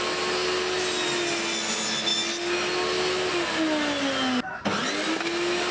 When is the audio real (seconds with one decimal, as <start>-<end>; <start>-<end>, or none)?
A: 0.0-5.7